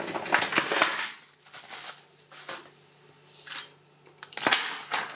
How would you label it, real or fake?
real